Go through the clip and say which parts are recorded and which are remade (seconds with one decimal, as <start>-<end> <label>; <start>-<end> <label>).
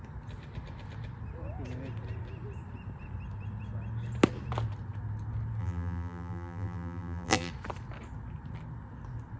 0.0-5.6 recorded; 5.6-7.5 remade; 7.5-9.4 recorded